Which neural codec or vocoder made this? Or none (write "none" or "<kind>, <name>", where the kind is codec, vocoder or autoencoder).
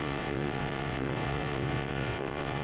vocoder, WaveNeXt